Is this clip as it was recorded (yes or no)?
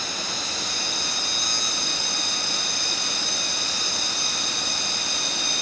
yes